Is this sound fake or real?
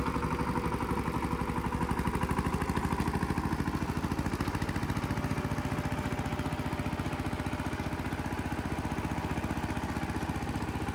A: real